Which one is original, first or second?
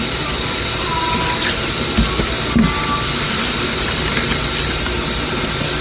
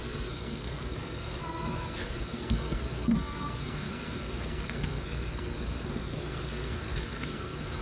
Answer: first